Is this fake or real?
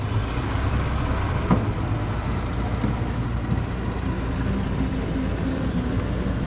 real